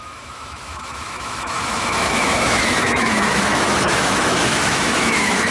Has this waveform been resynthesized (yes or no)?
yes